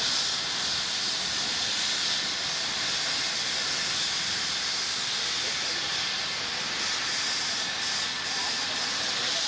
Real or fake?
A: real